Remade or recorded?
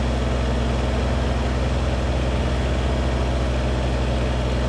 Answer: recorded